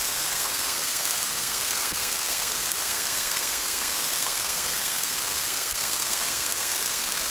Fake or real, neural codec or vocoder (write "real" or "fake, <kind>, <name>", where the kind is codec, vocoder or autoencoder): fake, codec, SNAC